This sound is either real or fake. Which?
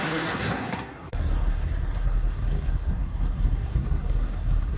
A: fake